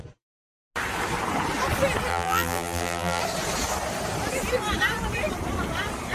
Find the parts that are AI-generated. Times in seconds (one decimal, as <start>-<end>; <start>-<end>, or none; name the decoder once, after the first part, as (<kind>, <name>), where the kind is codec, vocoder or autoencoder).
2.1-3.2 (vocoder, BigVGAN v2)